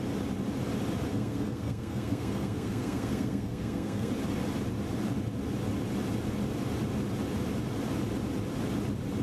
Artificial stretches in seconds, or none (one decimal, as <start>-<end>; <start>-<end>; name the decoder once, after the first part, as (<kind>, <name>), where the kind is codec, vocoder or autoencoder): 1.1-4.1 (codec, SNAC)